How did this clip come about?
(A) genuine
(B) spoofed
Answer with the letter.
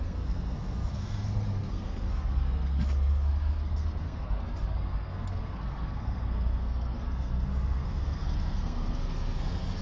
B